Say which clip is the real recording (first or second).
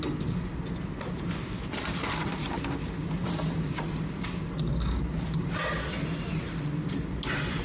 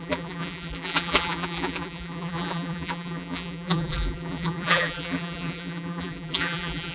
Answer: first